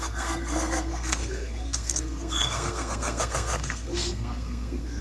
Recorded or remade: remade